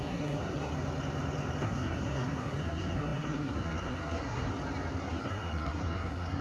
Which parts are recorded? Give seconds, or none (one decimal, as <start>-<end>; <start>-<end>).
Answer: 0.7-1.6; 4.5-5.0